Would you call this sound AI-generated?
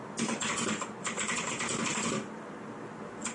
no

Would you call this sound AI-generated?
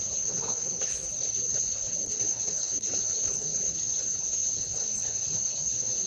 yes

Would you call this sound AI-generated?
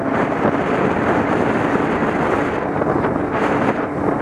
no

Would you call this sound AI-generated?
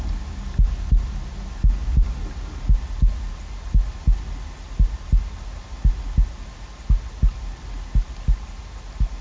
no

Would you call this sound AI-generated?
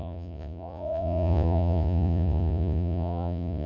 yes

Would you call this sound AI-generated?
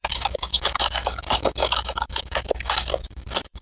yes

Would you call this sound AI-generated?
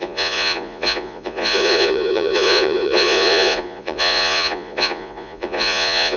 yes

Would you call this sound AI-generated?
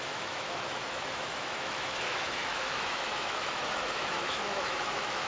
yes